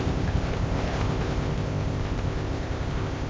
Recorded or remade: remade